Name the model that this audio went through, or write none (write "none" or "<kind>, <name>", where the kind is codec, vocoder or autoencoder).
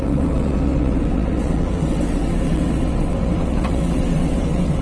vocoder, WaveNeXt